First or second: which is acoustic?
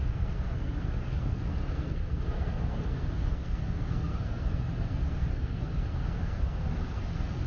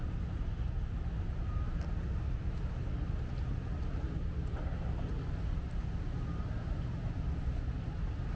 second